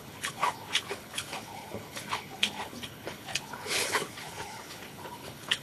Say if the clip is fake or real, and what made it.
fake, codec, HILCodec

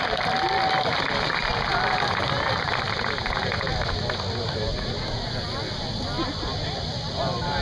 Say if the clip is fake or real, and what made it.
real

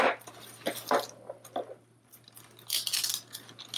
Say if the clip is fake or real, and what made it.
real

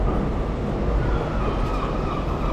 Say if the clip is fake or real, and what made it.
real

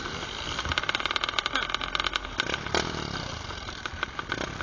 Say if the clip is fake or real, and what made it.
real